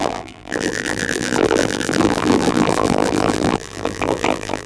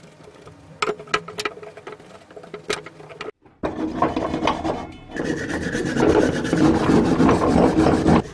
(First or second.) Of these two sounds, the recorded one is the second